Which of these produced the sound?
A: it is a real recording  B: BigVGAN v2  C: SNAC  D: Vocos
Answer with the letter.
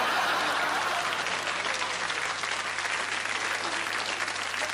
A